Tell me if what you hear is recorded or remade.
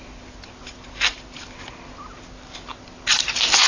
recorded